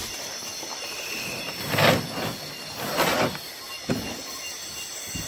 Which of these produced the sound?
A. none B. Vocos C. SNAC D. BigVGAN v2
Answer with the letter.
A